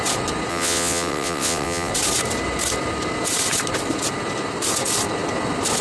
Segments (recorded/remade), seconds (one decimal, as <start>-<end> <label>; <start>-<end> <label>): 0.0-0.5 recorded; 0.5-1.9 remade; 1.9-5.8 recorded